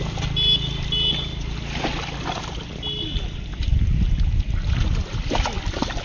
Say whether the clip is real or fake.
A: real